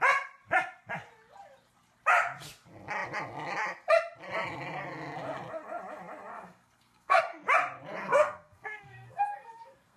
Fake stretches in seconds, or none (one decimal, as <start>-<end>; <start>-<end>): 6.3-7.2; 8.0-10.0

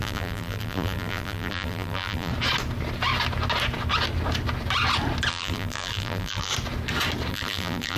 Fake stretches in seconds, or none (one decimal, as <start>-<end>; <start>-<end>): 0.0-2.3; 5.3-6.5; 7.3-8.0

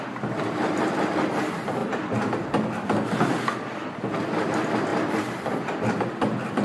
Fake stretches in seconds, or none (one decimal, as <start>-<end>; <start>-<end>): none

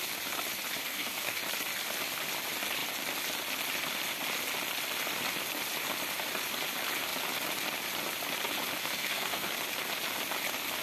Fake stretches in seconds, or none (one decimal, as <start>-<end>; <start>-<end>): 0.8-1.4; 8.8-9.5

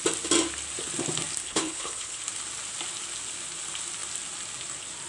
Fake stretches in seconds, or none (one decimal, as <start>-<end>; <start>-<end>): 1.4-2.2